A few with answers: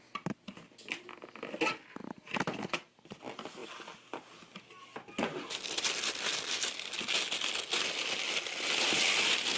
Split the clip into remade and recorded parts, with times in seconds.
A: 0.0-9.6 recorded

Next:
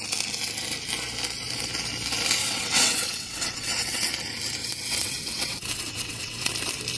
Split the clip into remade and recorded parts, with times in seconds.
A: 0.0-2.4 recorded; 2.4-4.1 remade; 4.1-4.6 recorded; 4.6-6.5 remade; 6.5-7.0 recorded

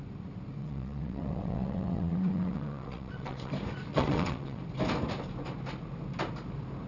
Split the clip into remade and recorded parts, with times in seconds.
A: 0.0-0.6 recorded; 0.6-3.5 remade; 3.5-3.9 recorded; 3.9-4.6 remade; 4.6-6.9 recorded

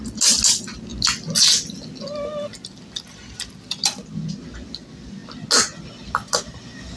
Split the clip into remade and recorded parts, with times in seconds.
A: 0.0-7.0 recorded

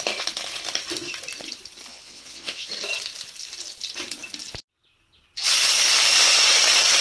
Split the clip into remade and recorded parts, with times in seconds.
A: 0.0-1.9 recorded; 1.9-2.7 remade; 2.7-7.0 recorded

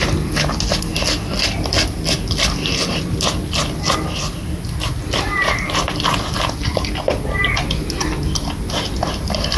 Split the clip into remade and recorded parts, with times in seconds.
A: 0.0-9.6 recorded

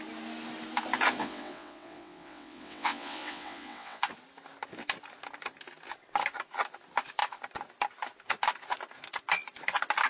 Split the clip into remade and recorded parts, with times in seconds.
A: 0.0-1.2 recorded; 1.2-4.0 remade; 4.0-10.1 recorded